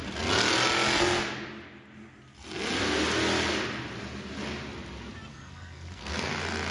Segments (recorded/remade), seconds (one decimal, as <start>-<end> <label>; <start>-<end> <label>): 0.0-5.3 recorded; 5.3-6.3 remade; 6.3-6.7 recorded